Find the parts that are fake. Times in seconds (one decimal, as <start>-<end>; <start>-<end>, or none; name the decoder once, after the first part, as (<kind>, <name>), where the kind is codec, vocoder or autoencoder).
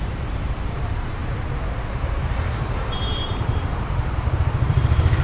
0.0-5.2 (vocoder, BigVGAN v2)